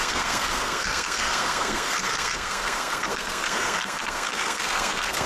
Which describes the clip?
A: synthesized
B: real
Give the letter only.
A